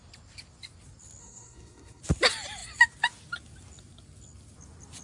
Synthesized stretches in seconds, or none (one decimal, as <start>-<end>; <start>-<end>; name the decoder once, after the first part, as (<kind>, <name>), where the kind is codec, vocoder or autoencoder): 1.2-2.0 (codec, SNAC)